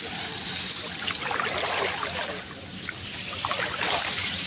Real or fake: real